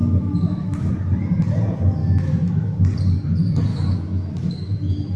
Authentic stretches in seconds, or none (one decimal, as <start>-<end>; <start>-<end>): 0.9-2.0; 2.8-3.7